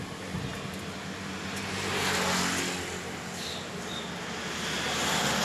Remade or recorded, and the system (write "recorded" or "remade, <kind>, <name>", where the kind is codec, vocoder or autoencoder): recorded